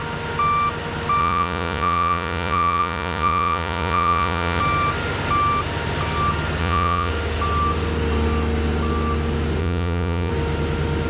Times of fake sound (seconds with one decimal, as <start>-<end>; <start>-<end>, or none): 1.2-4.6; 6.6-7.1; 9.6-10.3